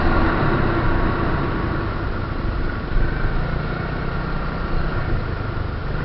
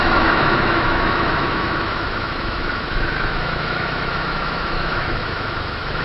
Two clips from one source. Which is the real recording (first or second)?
first